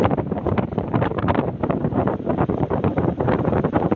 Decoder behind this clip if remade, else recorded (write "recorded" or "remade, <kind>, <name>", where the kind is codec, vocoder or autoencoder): remade, vocoder, BigVGAN v2